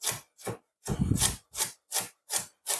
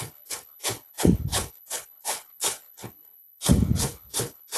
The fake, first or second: second